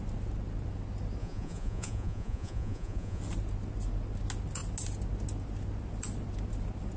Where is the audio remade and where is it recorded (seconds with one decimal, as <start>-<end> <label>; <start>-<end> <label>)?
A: 0.0-1.2 recorded; 1.2-3.2 remade; 3.2-7.0 recorded